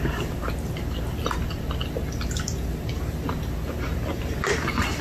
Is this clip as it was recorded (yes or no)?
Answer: yes